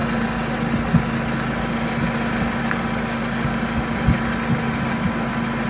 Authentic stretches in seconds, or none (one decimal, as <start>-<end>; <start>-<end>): 0.0-5.7